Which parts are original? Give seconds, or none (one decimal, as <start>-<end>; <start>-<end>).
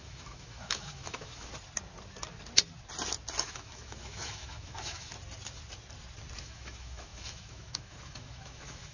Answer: 1.5-3.4; 5.1-6.4